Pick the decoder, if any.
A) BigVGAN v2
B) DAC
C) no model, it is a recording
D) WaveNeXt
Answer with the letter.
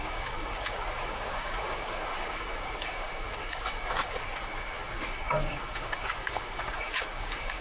B